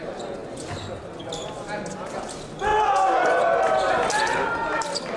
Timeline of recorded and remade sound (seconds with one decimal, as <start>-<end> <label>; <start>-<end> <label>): 0.0-5.2 recorded